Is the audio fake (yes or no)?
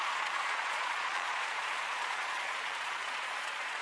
yes